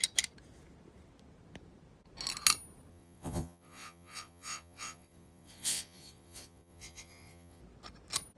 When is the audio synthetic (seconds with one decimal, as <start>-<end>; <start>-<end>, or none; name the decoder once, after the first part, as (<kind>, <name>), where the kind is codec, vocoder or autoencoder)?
2.9-7.6 (vocoder, Vocos)